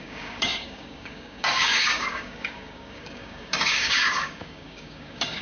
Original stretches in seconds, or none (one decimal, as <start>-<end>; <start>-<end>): none